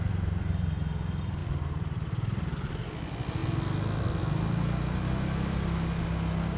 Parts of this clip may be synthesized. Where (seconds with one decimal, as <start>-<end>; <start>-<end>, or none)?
none